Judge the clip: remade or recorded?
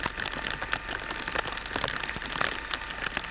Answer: recorded